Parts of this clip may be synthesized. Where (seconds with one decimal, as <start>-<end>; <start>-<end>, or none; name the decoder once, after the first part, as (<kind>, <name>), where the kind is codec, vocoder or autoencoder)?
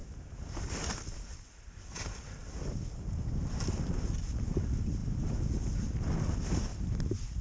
0.6-2.4 (vocoder, BigVGAN v2); 3.4-7.4